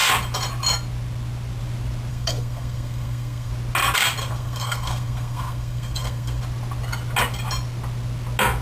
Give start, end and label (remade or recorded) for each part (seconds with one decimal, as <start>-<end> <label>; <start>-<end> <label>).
0.0-2.1 recorded; 2.1-3.5 remade; 3.5-4.2 recorded; 4.2-6.4 remade; 6.4-8.6 recorded